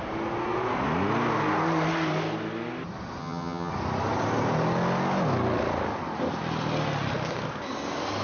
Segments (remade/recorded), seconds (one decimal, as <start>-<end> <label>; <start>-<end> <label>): 0.0-3.2 recorded; 3.2-3.7 remade; 3.7-8.2 recorded